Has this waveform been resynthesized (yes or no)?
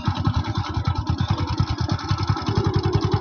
no